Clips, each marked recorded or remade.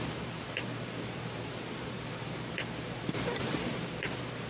remade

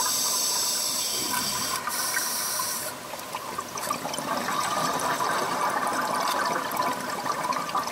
remade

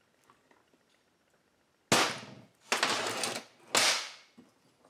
recorded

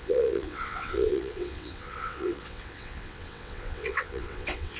remade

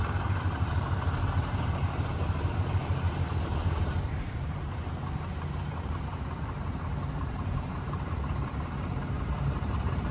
remade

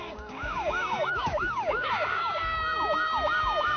remade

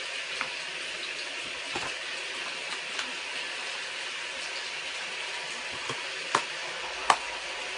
recorded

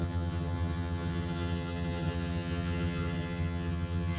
remade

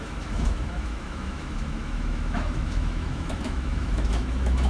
remade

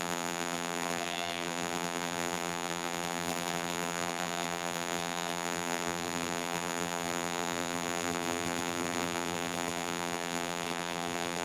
remade